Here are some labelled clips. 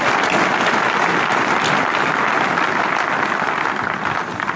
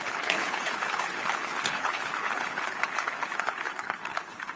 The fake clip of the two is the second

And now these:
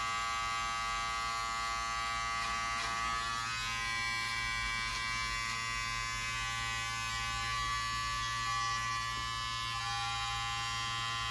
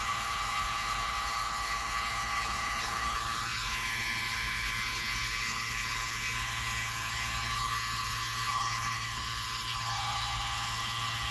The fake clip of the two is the second